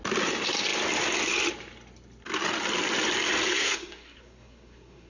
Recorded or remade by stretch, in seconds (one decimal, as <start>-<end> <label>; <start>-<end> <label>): 0.0-3.6 recorded; 3.6-5.1 remade